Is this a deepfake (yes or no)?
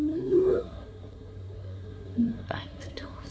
yes